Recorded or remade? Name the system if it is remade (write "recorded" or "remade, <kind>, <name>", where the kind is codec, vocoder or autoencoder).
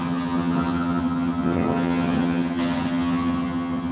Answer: remade, vocoder, HiFi-GAN